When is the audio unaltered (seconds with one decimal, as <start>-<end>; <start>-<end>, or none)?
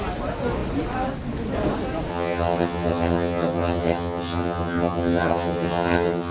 0.0-2.1